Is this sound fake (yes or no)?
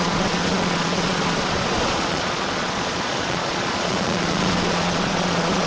yes